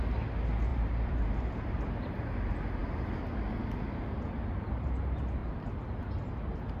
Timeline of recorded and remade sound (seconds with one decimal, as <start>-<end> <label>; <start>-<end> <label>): 0.0-0.7 recorded; 0.7-2.2 remade; 2.2-6.8 recorded